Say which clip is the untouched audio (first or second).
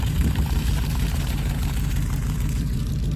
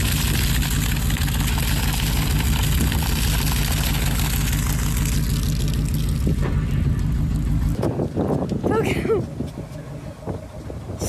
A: second